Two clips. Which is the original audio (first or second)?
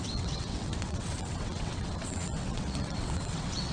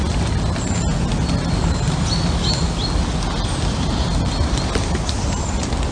second